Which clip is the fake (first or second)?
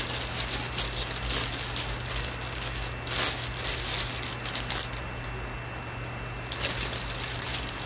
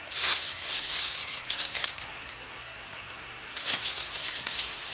second